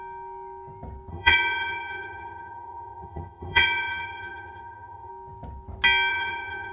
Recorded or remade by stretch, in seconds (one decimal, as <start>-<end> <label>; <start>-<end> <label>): 0.0-1.1 recorded; 1.1-5.1 remade; 5.1-6.1 recorded; 6.1-6.7 remade